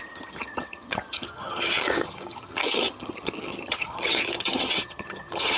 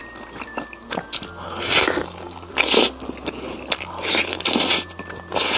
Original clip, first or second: second